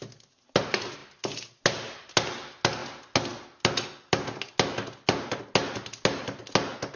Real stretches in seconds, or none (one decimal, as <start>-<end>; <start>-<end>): 0.0-7.0